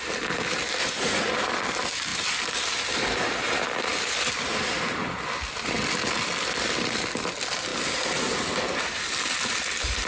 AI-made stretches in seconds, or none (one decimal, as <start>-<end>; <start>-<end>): 0.8-1.3